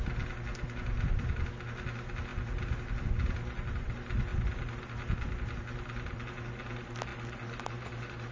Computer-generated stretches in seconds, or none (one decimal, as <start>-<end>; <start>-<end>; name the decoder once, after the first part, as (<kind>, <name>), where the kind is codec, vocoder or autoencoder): none

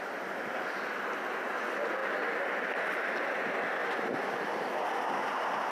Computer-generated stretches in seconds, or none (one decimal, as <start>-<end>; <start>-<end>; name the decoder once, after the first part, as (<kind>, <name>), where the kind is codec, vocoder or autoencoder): none

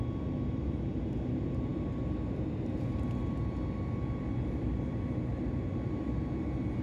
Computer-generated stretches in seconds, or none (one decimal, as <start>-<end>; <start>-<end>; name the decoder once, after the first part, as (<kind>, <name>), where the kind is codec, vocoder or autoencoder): none

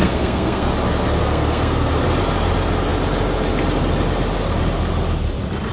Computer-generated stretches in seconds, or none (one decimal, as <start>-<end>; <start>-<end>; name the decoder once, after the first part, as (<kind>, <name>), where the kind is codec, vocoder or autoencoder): 0.0-0.7 (codec, SNAC); 1.2-1.9

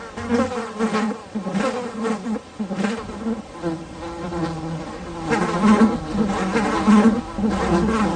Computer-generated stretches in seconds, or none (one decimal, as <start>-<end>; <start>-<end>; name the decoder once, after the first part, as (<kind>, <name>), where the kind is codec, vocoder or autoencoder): none

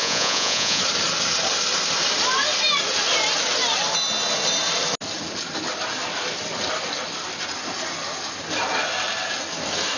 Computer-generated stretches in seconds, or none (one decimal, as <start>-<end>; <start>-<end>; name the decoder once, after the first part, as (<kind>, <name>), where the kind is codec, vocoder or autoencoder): 0.0-0.8 (vocoder, Vocos)